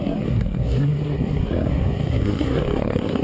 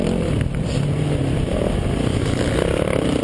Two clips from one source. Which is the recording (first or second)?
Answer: second